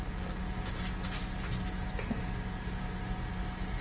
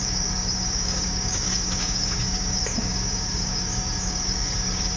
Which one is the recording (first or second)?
first